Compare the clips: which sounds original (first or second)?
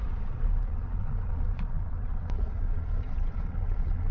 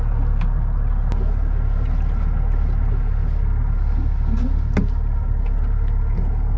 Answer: second